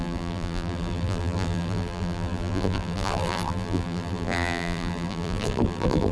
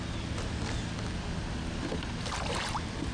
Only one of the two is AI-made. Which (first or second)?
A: first